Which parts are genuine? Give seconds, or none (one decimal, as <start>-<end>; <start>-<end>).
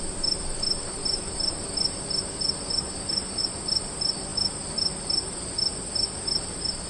0.0-6.9